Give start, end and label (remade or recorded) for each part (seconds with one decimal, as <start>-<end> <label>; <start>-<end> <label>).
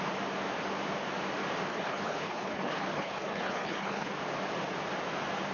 0.0-1.7 recorded; 1.7-4.1 remade; 4.1-5.5 recorded